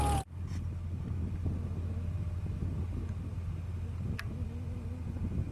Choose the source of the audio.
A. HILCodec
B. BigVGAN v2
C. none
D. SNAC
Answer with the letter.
C